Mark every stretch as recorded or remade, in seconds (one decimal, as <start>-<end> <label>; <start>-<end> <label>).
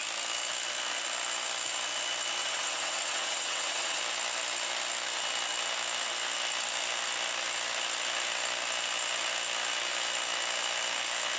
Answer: 0.0-2.4 recorded; 2.4-4.0 remade; 4.0-11.4 recorded